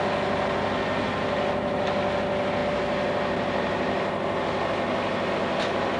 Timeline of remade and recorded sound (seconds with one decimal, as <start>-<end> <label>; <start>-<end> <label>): 0.0-6.0 recorded